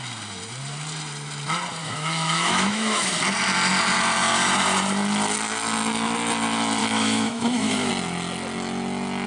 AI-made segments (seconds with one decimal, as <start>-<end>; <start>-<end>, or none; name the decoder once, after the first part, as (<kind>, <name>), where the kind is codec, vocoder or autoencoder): 1.8-3.1 (autoencoder, DAC-VAE); 6.8-7.9